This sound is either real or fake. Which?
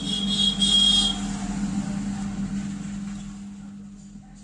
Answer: real